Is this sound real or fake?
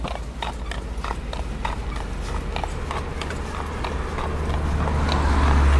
real